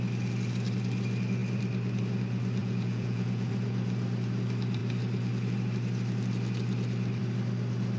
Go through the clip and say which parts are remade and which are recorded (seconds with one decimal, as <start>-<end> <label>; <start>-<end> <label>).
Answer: 0.0-2.6 recorded; 2.6-3.5 remade; 3.5-8.0 recorded